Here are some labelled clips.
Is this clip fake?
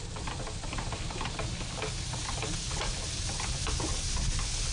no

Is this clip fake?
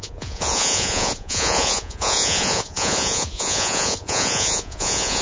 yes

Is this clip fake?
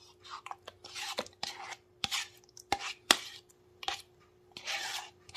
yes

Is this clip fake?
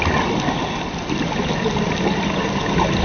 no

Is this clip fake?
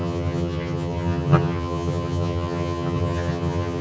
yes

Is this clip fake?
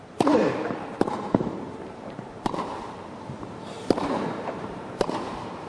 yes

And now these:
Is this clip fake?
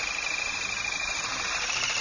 no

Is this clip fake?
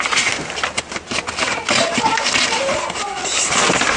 no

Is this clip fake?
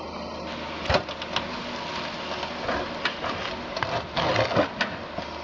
no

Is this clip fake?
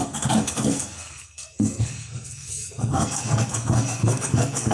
yes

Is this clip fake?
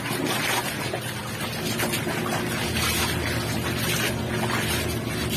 no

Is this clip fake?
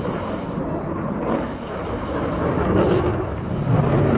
no